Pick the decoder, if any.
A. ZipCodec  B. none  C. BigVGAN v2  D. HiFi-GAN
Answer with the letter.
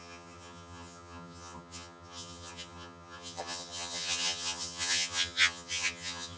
D